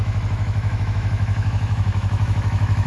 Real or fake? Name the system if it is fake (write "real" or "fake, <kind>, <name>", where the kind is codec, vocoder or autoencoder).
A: fake, autoencoder, DAC-VAE